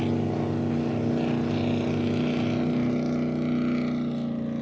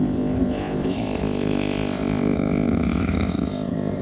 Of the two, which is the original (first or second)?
first